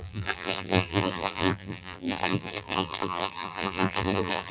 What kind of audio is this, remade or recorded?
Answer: remade